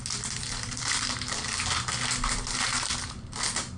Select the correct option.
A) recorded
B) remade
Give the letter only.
A